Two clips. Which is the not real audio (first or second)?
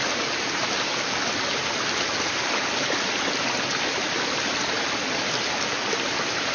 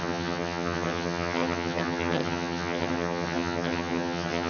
second